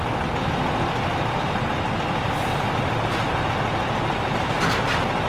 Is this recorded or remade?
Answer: recorded